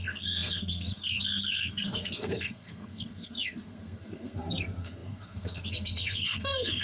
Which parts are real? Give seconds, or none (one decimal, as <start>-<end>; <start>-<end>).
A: none